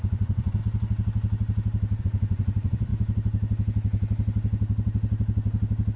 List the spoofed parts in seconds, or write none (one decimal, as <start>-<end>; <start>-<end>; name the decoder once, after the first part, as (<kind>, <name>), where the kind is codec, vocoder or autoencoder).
0.0-0.6 (vocoder, Vocos); 2.0-2.9